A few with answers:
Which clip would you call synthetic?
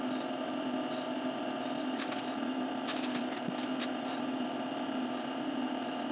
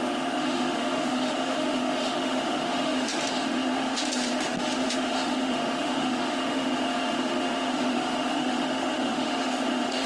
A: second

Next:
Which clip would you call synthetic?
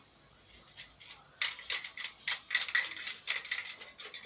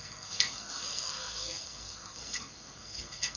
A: second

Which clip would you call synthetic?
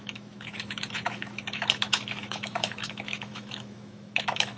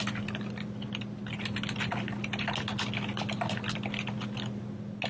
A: first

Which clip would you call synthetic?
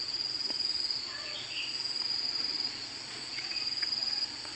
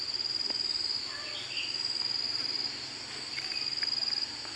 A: first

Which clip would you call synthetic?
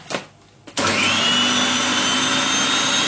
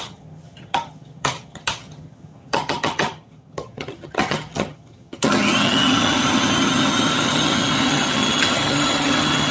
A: second